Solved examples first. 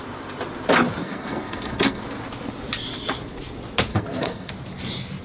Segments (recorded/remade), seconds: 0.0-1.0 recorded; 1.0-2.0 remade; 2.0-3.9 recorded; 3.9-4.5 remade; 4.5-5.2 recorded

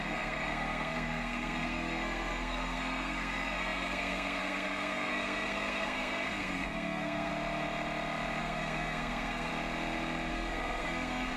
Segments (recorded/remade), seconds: 0.0-7.3 remade; 7.3-8.4 recorded; 8.4-9.5 remade; 9.5-10.3 recorded; 10.3-11.4 remade

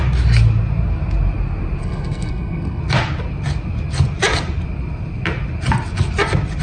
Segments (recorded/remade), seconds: 0.0-1.8 recorded; 1.8-2.8 remade; 2.8-6.6 recorded

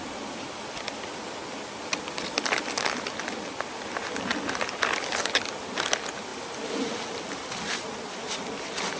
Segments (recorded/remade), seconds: 0.0-9.0 recorded